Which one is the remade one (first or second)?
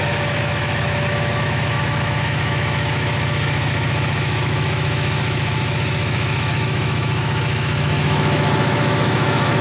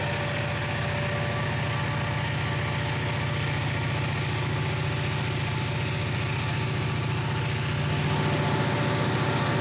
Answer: first